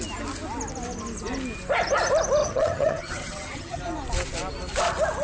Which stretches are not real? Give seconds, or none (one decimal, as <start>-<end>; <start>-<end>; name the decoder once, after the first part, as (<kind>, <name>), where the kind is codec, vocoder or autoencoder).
2.4-3.8 (vocoder, HiFi-GAN)